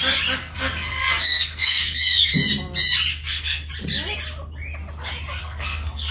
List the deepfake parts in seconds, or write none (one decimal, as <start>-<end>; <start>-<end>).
0.4-2.3; 3.1-3.7; 5.4-6.1